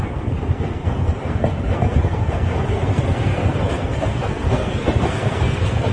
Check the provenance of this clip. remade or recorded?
remade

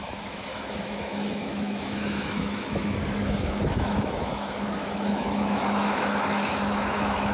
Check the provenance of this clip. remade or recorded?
remade